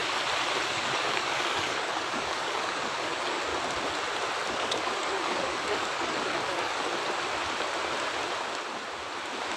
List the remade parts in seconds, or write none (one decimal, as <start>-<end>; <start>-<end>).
0.6-3.5; 4.5-7.0